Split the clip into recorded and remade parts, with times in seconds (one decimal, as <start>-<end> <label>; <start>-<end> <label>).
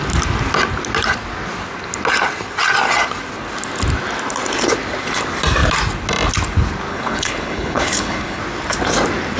0.0-6.9 recorded; 6.9-8.4 remade; 8.4-9.4 recorded